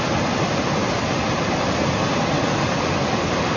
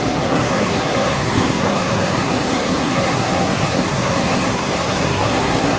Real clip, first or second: first